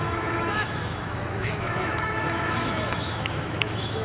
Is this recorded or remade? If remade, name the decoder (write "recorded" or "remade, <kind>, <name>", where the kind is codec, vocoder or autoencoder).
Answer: remade, autoencoder, DAC-VAE